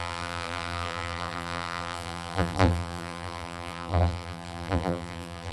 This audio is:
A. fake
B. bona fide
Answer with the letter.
A